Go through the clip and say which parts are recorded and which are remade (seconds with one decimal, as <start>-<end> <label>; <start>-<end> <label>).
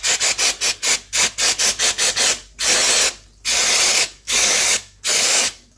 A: 0.0-3.9 recorded; 3.9-5.8 remade